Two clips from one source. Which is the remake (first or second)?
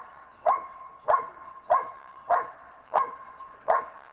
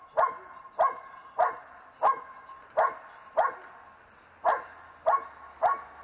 first